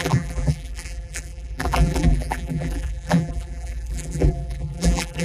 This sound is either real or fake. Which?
fake